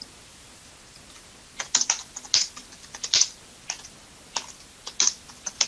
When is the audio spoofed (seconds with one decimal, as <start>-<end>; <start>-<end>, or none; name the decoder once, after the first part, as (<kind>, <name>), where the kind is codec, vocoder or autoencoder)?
2.6-4.0 (vocoder, BigVGAN v2)

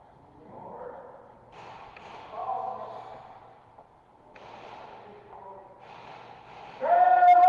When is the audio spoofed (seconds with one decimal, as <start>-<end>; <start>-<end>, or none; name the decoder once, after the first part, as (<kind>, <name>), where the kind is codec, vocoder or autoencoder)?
none

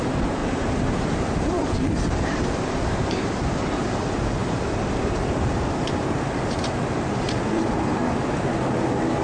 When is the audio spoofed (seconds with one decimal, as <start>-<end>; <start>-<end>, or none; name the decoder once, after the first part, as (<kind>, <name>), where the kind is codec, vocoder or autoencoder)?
0.0-8.0 (vocoder, BigVGAN v2)

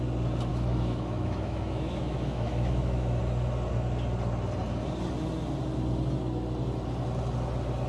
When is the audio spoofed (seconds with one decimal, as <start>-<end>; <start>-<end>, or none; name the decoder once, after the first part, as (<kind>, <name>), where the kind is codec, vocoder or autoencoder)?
0.5-3.2 (autoencoder, DAC-VAE)

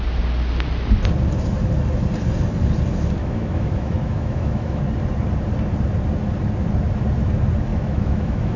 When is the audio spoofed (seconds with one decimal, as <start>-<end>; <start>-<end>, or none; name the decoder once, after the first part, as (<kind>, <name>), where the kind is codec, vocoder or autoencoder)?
3.2-4.8 (autoencoder, DAC-VAE); 7.7-8.6

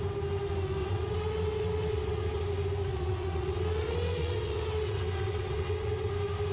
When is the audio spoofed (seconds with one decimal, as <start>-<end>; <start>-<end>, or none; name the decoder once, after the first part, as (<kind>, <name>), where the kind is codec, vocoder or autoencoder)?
0.8-2.4 (vocoder, WaveNeXt); 2.9-6.1

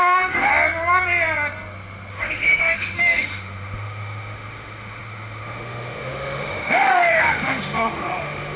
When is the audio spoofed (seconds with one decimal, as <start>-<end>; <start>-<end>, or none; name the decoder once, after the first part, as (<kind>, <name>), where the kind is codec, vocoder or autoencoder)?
0.0-0.5 (autoencoder, DAC-VAE); 2.1-8.6

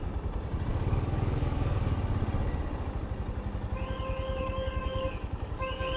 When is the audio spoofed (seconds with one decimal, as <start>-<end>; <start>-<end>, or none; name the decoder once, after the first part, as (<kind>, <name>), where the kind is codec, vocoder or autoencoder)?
0.7-1.9 (codec, DAC); 4.4-6.0